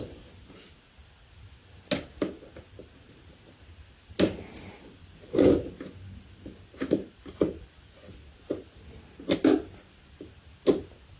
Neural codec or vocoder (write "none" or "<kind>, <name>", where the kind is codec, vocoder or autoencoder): none